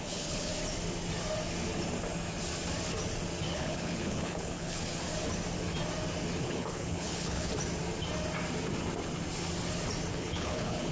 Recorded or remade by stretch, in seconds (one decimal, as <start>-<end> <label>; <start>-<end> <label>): 0.0-0.5 remade; 0.5-3.5 recorded; 3.5-4.9 remade; 4.9-6.4 recorded; 6.4-7.5 remade; 7.5-10.1 recorded; 10.1-10.9 remade